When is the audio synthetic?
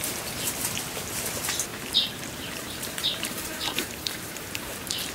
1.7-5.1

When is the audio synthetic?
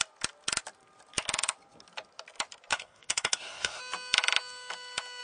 2.7-3.8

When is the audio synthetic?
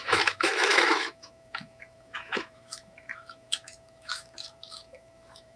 0.0-5.6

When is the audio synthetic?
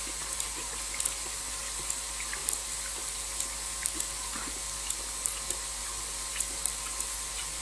none